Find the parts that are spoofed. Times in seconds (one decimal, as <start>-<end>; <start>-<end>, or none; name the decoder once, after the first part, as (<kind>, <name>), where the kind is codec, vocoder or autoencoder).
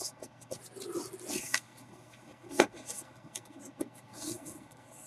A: 0.0-0.6 (codec, SNAC); 1.3-5.1